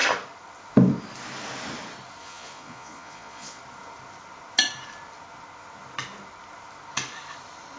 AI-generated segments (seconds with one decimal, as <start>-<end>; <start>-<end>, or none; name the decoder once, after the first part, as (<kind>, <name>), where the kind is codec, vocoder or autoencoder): 2.2-3.6 (vocoder, Vocos)